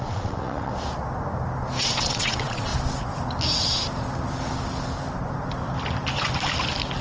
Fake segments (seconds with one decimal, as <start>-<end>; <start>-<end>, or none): 0.0-0.7; 1.8-2.7

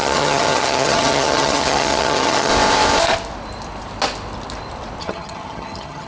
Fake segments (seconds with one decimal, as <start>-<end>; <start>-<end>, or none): 0.0-2.5; 5.0-6.1

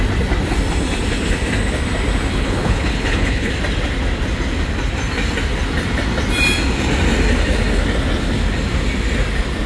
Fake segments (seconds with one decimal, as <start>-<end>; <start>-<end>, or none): 2.3-3.5

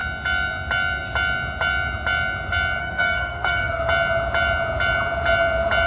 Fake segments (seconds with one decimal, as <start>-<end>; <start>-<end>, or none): 2.8-3.8

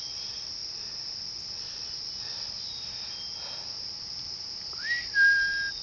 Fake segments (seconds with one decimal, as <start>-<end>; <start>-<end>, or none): none

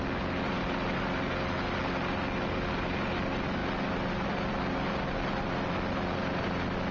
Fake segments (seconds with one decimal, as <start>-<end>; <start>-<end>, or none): none